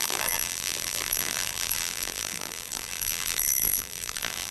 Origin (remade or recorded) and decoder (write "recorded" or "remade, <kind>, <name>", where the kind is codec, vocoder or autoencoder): remade, vocoder, BigVGAN v2